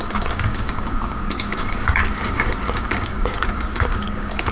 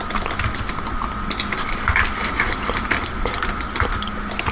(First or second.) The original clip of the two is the second